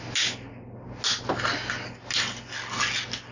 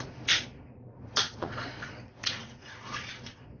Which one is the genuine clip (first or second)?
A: first